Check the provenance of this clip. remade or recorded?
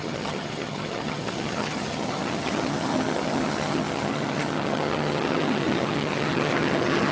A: remade